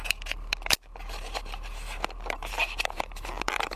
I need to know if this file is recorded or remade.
remade